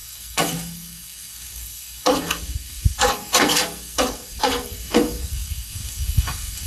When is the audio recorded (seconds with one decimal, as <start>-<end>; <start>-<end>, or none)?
none